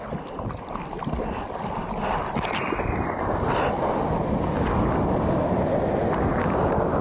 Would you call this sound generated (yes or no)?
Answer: no